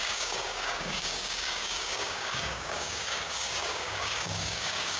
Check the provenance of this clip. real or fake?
fake